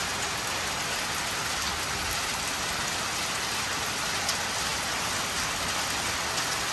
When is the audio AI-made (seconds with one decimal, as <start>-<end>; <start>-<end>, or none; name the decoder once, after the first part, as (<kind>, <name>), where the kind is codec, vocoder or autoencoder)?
none